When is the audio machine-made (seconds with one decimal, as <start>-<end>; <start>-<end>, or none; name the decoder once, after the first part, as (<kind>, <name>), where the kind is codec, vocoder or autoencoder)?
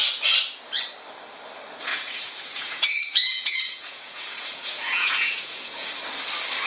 1.9-5.9 (vocoder, Vocos)